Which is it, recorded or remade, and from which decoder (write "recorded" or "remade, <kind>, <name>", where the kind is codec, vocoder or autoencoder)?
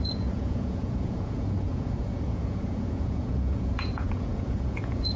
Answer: remade, vocoder, Vocos